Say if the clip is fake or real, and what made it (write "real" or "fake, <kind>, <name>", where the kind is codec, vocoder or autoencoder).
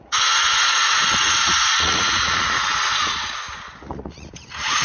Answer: fake, vocoder, Vocos